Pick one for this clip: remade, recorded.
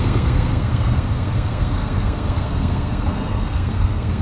remade